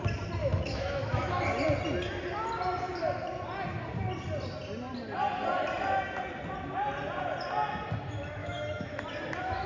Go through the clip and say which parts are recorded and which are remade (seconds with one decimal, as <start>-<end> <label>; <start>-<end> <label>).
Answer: 0.0-0.4 recorded; 0.4-1.4 remade; 1.4-8.4 recorded; 8.4-9.0 remade; 9.0-9.7 recorded